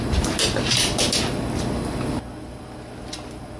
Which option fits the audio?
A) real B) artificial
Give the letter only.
A